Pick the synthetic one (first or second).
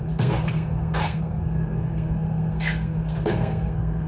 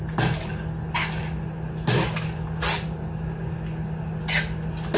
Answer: first